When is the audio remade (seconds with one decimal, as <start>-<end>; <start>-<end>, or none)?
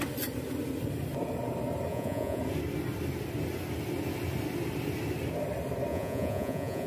1.9-2.4; 5.9-6.9